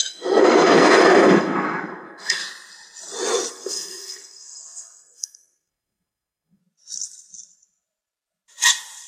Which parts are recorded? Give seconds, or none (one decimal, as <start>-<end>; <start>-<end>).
2.4-3.5; 6.6-9.1